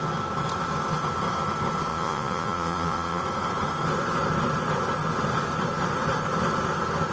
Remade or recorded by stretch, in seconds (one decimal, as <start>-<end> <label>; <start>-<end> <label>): 0.0-1.9 recorded; 1.9-3.2 remade; 3.2-7.1 recorded